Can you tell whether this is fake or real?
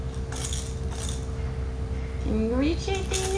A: real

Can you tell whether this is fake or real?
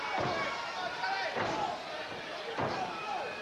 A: real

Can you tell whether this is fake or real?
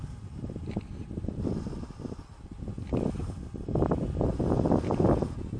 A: real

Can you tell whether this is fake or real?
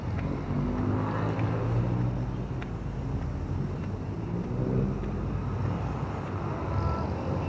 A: real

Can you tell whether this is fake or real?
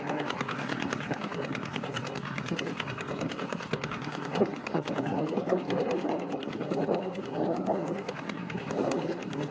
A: fake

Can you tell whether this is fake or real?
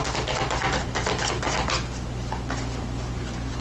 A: real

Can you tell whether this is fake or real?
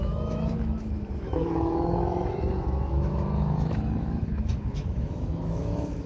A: fake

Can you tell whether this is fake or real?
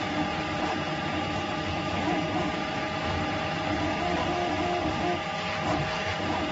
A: real